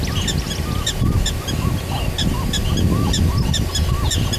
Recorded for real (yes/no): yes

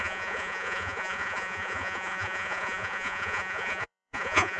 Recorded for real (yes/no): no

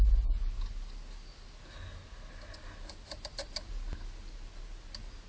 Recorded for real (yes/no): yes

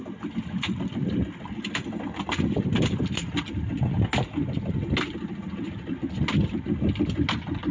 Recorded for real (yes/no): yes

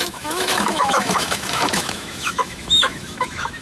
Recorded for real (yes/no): no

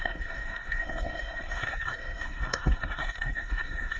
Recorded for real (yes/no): no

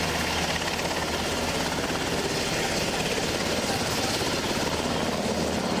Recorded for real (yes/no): yes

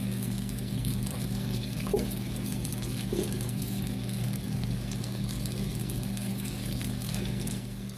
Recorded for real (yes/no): no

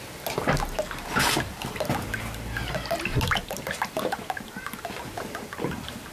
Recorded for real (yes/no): yes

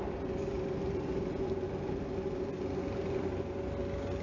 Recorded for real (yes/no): yes